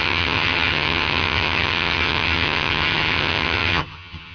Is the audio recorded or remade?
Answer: remade